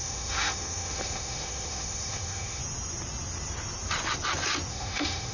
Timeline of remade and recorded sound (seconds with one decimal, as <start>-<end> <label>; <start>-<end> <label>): 0.0-2.6 remade; 2.6-4.7 recorded; 4.7-5.3 remade